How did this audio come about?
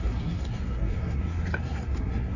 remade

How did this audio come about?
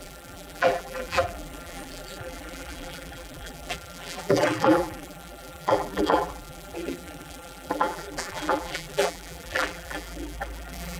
remade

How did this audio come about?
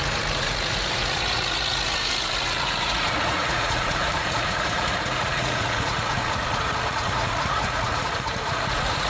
remade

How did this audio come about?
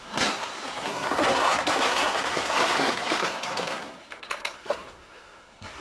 remade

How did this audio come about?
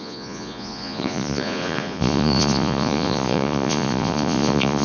remade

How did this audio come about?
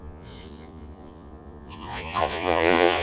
remade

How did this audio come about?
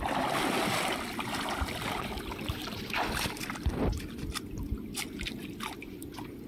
recorded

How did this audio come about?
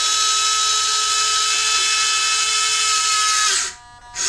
recorded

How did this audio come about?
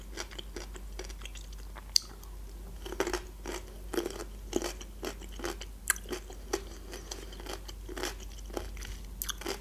recorded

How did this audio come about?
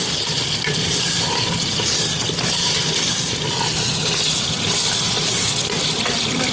recorded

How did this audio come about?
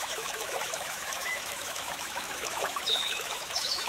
remade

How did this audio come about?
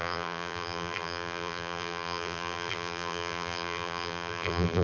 remade